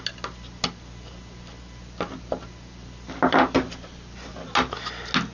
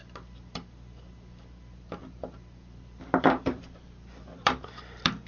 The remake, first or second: second